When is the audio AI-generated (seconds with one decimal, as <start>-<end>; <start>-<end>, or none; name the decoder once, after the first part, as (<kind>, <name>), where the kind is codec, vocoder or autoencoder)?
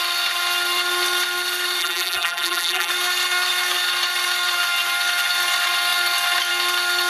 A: 1.8-2.9 (vocoder, BigVGAN v2)